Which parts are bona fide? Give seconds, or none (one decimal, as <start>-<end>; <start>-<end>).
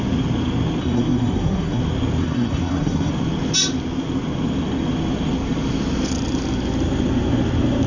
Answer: 0.0-0.8; 1.8-2.2; 3.1-7.9